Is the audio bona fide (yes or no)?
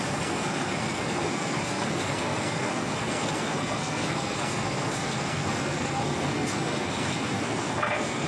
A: no